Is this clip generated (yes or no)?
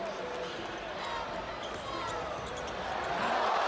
no